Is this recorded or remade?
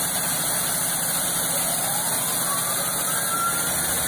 remade